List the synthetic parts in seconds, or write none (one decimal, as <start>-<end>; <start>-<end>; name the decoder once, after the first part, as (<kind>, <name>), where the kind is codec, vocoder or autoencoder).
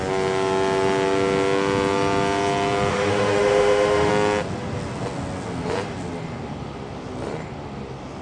2.9-4.1 (autoencoder, DAC-VAE)